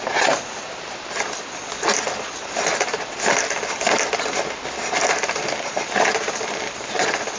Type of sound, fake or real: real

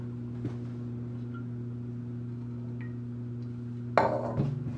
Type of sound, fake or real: real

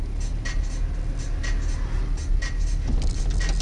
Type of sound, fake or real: real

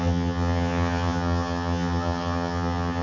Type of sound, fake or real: fake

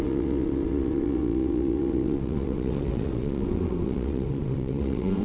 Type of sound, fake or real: fake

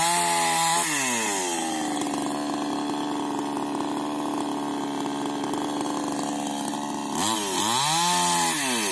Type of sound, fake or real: real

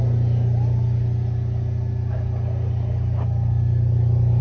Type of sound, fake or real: real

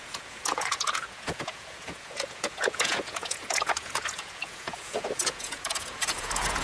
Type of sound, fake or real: fake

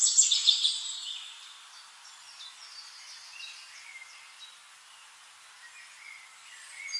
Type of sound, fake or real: real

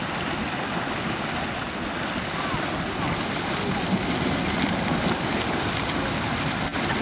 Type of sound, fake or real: real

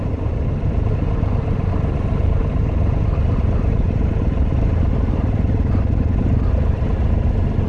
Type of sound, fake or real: fake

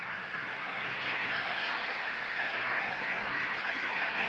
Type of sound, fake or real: fake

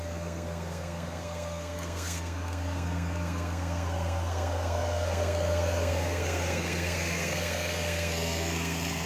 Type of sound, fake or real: fake